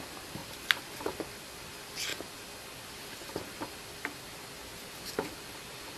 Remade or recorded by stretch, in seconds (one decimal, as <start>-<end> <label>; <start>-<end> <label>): 0.0-0.4 remade; 0.4-1.5 recorded; 1.5-2.1 remade; 2.1-6.0 recorded